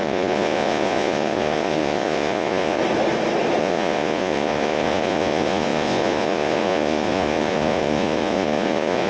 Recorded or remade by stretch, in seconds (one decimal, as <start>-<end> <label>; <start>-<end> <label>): 0.0-2.8 remade; 2.8-3.6 recorded; 3.6-9.1 remade